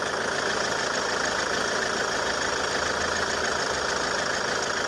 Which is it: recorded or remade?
recorded